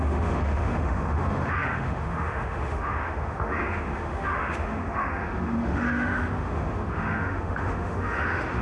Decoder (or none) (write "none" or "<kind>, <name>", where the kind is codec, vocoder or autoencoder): autoencoder, DAC-VAE